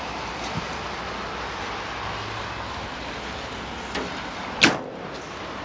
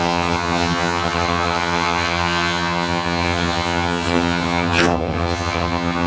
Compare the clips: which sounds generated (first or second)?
second